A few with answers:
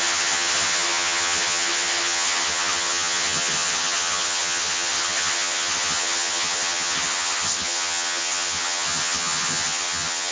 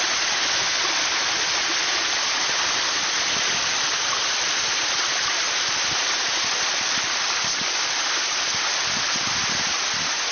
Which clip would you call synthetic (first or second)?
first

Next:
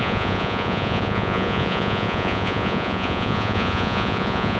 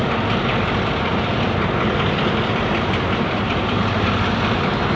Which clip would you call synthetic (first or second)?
first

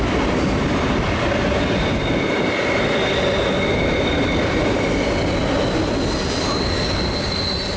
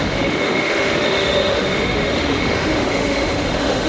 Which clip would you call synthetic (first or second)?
second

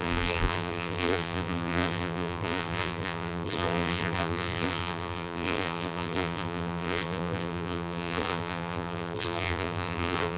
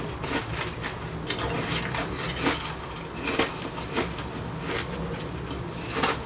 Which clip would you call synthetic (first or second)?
first